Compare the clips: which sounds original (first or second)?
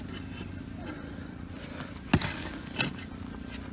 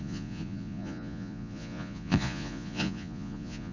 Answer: first